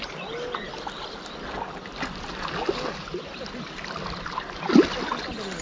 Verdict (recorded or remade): recorded